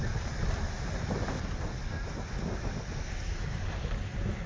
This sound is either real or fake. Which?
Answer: real